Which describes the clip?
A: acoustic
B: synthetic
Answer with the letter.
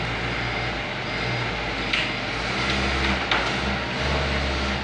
A